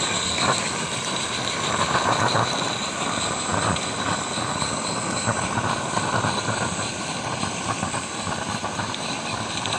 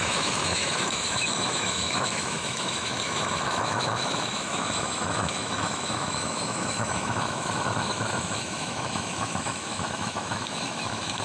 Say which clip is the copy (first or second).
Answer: second